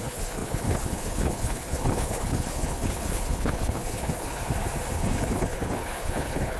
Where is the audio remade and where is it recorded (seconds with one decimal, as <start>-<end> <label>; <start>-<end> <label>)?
0.0-4.4 remade; 4.4-4.9 recorded; 4.9-6.6 remade

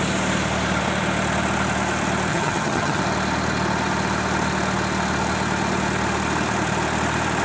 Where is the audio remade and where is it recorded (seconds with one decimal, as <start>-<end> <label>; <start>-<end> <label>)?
0.0-2.3 recorded; 2.3-3.0 remade; 3.0-7.4 recorded

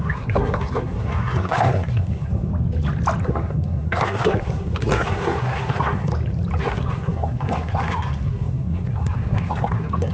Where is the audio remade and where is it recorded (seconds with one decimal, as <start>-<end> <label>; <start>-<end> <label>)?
0.0-2.5 remade; 2.5-3.2 recorded; 3.2-6.1 remade; 6.1-6.6 recorded; 6.6-10.1 remade

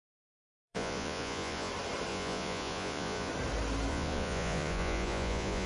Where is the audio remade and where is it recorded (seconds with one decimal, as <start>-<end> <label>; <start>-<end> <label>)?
0.0-0.5 recorded; 0.5-1.7 remade; 1.7-2.1 recorded; 2.1-3.3 remade; 3.3-3.9 recorded; 3.9-5.7 remade